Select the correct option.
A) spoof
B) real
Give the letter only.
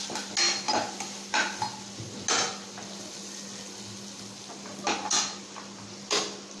B